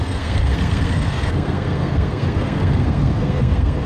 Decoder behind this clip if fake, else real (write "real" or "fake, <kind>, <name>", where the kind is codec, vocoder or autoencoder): fake, codec, SNAC